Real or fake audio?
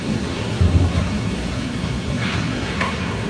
fake